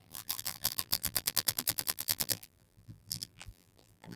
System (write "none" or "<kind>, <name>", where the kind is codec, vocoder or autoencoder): vocoder, BigVGAN v2